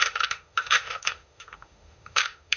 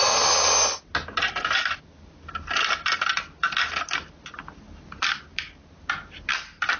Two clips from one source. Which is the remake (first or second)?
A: first